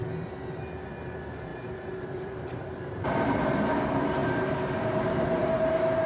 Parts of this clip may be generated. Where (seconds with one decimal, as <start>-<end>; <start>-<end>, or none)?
1.5-3.5; 4.2-6.1